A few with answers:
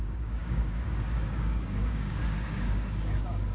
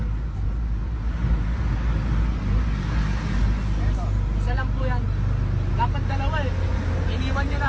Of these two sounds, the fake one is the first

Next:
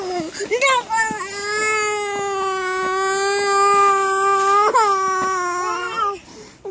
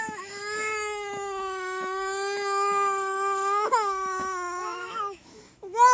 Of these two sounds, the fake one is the second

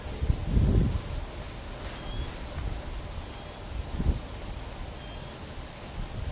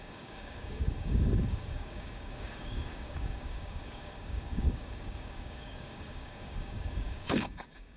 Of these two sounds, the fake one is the second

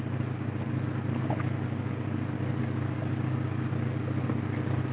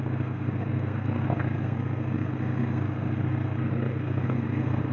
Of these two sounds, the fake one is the second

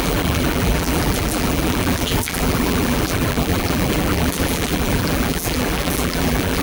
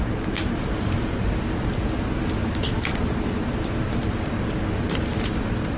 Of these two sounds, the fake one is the first